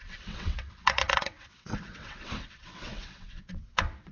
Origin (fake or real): fake